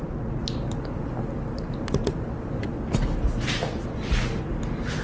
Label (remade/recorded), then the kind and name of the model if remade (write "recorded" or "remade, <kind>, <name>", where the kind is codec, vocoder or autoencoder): recorded